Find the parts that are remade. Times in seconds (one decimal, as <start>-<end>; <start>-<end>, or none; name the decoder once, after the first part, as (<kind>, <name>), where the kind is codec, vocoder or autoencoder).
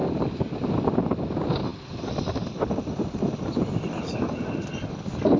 0.0-0.9 (vocoder, BigVGAN v2)